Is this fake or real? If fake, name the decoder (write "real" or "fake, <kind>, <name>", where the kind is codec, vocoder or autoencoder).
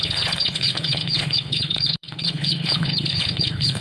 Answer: fake, codec, HILCodec